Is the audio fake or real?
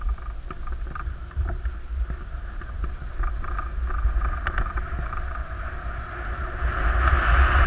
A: real